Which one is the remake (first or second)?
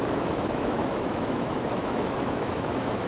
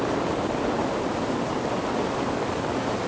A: first